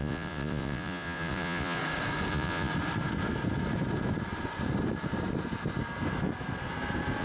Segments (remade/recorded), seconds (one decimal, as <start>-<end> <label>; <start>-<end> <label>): 0.0-1.8 remade; 1.8-2.3 recorded; 2.3-2.7 remade; 2.7-7.2 recorded